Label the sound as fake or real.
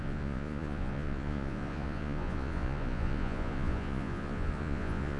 fake